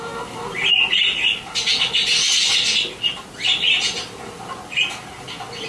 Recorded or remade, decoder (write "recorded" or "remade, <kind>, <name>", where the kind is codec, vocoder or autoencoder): recorded